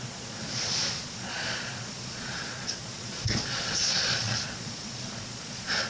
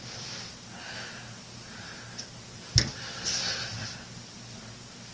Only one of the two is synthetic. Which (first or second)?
first